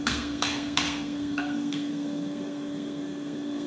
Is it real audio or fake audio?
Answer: fake